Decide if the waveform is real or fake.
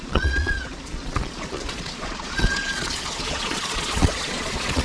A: fake